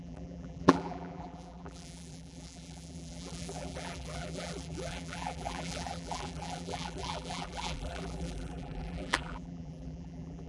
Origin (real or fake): fake